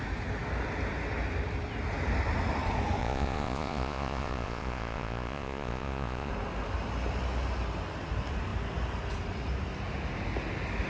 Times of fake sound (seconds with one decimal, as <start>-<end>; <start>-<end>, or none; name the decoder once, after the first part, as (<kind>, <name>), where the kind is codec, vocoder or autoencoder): 3.0-6.3 (vocoder, Vocos)